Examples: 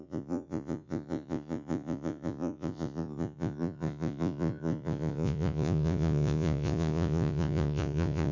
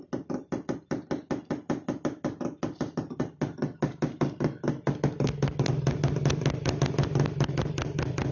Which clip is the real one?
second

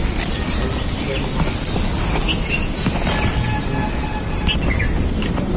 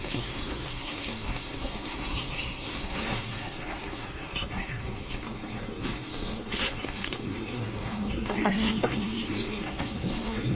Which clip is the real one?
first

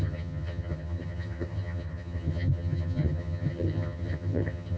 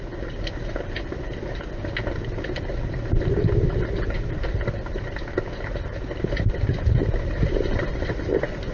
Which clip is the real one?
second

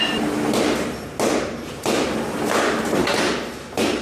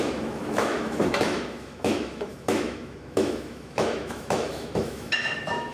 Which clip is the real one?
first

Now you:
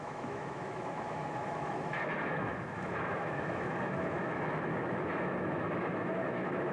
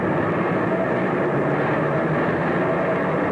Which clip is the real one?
second